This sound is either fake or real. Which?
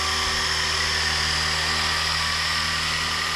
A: real